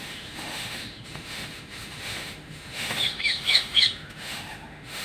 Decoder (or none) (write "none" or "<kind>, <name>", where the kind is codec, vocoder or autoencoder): autoencoder, DAC-VAE